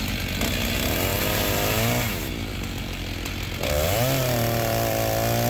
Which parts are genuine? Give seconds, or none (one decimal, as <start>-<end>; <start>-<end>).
0.0-5.5

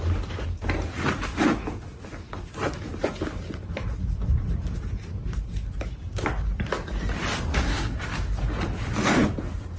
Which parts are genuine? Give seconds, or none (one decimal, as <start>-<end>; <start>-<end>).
0.0-7.5; 8.0-9.8

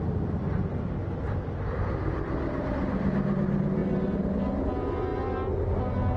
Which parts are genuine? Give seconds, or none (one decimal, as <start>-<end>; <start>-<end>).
0.0-6.2

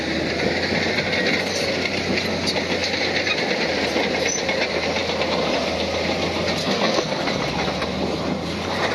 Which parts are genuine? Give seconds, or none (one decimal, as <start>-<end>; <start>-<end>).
0.0-6.6; 7.2-8.9